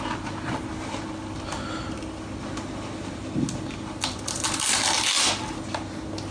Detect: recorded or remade recorded